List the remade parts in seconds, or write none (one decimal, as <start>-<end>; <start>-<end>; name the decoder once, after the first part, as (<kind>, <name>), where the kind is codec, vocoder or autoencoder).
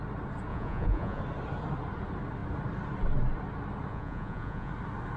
0.5-1.2 (vocoder, Vocos); 3.9-4.7